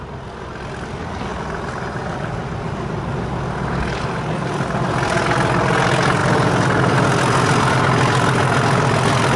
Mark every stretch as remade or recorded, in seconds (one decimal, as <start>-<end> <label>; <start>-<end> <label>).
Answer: 0.0-9.4 recorded